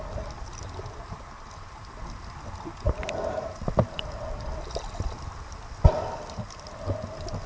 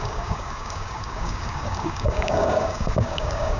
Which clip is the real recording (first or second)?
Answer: first